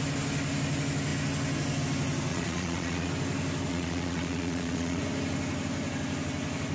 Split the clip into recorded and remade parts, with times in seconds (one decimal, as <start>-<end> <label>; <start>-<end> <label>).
0.0-2.3 recorded; 2.3-3.1 remade; 3.1-3.7 recorded; 3.7-5.0 remade; 5.0-6.7 recorded